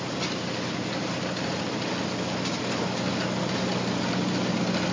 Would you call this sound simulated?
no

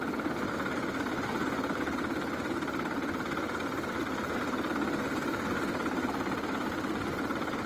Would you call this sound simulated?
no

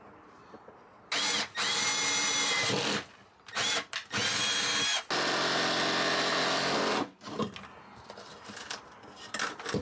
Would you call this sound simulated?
no